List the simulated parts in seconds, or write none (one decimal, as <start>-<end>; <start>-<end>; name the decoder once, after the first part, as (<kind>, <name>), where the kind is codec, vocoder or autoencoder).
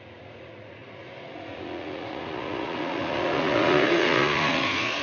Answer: 0.0-5.0 (vocoder, Vocos)